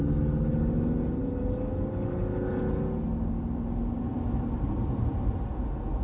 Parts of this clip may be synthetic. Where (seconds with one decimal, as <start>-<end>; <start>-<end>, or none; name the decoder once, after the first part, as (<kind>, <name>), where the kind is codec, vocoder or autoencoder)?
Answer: none